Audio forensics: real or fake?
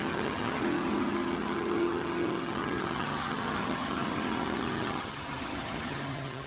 fake